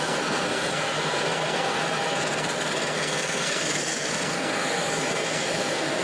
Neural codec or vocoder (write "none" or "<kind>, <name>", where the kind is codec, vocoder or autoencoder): codec, SNAC